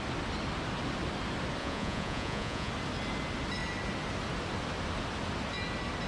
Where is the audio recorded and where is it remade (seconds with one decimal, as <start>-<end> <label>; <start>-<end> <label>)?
0.0-1.6 recorded; 1.6-2.7 remade; 2.7-6.1 recorded